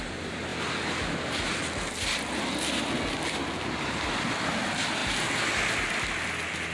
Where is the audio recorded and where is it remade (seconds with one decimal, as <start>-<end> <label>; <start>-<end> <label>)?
0.0-6.7 recorded